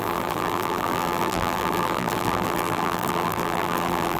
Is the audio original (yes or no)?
no